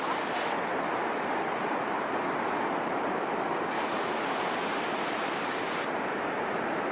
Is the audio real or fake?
real